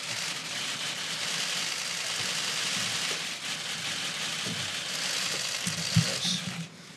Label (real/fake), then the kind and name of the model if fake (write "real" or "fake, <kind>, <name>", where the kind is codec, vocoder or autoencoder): real